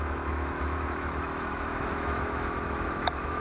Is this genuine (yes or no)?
no